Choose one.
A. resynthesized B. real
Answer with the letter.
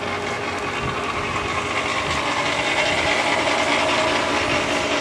B